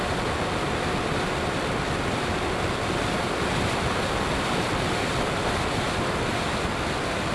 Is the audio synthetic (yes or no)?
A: no